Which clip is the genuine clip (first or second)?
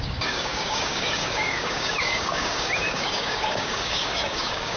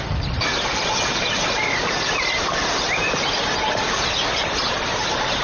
second